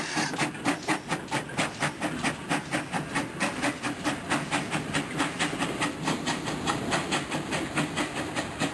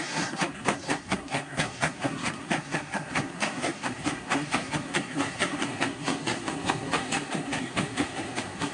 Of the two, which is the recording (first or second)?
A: first